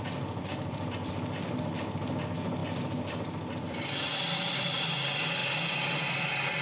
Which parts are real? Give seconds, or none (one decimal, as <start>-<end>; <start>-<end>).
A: 0.0-0.4; 1.1-2.6; 4.8-6.6